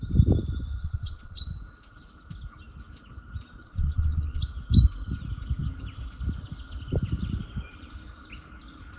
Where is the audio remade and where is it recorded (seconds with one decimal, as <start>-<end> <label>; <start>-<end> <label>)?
0.0-0.8 recorded; 0.8-1.5 remade; 1.5-3.6 recorded; 3.6-4.4 remade; 4.4-9.0 recorded